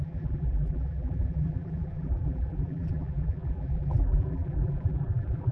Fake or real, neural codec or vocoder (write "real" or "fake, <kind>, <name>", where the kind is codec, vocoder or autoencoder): fake, vocoder, BigVGAN v2